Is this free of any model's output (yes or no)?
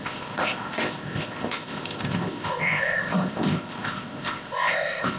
no